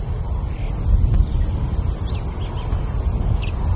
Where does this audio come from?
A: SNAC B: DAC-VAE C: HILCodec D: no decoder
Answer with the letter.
D